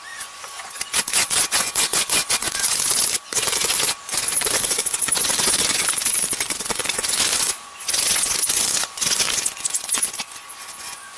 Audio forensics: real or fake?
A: fake